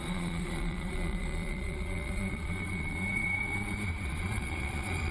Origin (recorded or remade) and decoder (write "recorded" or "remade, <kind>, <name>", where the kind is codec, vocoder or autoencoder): remade, vocoder, Vocos